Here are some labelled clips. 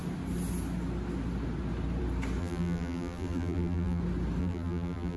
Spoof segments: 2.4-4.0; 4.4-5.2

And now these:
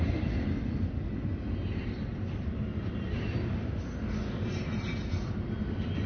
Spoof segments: none